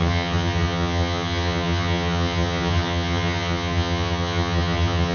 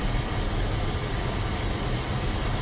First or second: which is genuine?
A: second